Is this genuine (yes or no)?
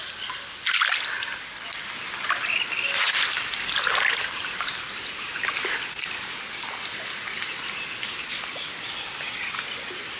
yes